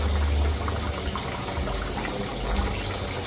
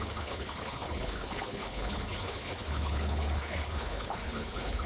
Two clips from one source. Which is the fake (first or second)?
second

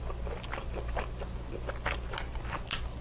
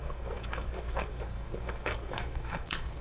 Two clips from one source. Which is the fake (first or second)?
second